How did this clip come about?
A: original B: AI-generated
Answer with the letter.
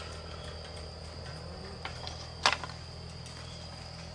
A